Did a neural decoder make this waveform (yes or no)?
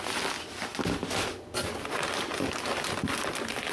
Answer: no